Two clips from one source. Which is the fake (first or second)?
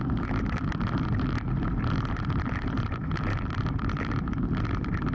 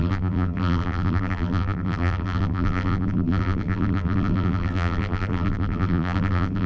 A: second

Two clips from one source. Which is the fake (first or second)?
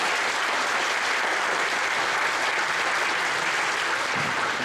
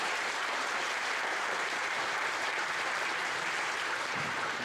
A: second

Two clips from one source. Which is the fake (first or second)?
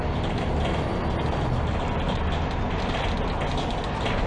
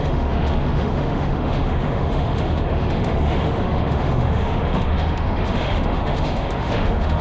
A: second